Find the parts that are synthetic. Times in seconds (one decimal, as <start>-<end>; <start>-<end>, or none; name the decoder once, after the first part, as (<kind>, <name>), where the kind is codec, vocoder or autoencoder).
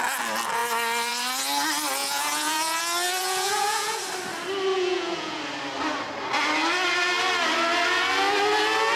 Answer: 2.0-2.8 (vocoder, Vocos); 3.2-4.0; 4.7-5.4